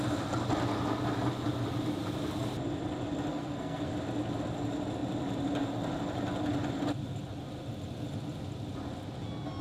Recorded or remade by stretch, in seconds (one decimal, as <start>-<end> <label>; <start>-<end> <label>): 0.0-3.3 recorded; 3.3-3.9 remade; 3.9-9.6 recorded